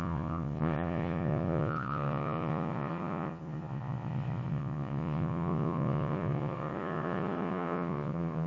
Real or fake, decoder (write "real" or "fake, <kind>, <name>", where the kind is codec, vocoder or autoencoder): fake, vocoder, Vocos